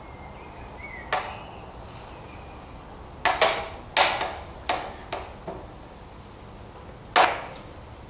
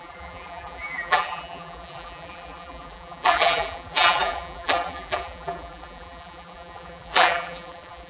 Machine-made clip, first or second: second